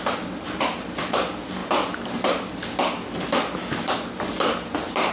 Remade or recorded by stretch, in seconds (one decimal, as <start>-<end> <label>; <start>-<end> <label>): 0.0-5.1 recorded